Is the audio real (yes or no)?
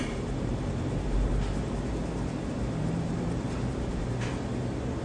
no